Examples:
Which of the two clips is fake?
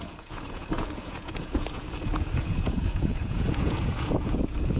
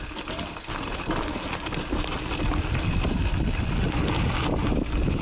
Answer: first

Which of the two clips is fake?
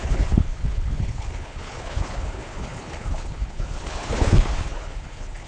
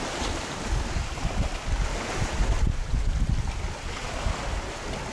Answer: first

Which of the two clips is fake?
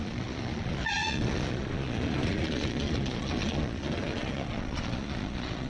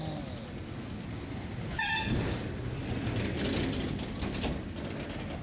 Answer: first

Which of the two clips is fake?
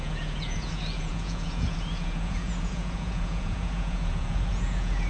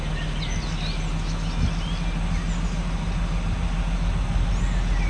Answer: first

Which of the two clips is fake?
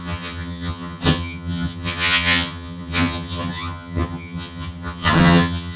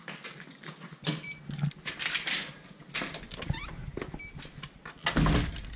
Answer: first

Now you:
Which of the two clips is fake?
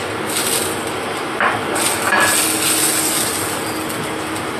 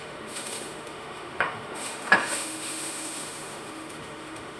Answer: second